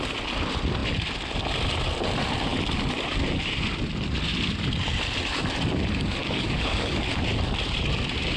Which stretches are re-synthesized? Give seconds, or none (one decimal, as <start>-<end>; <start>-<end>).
6.2-7.1